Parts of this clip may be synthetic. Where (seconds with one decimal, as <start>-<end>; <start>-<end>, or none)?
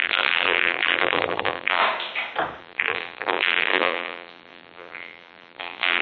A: 0.0-1.8; 2.6-6.0